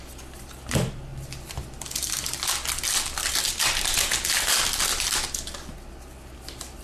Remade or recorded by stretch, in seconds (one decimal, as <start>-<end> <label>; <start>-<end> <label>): 0.0-6.8 recorded